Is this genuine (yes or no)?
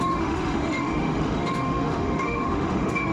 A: no